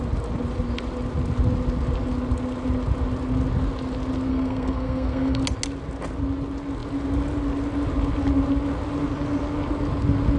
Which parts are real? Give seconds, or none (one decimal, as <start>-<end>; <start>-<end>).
0.0-4.3; 5.4-10.4